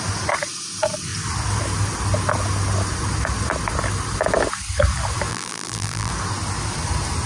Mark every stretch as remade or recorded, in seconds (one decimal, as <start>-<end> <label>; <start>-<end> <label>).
0.0-5.3 recorded; 5.3-6.1 remade; 6.1-7.3 recorded